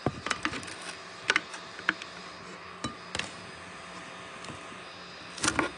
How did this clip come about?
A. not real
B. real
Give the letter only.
B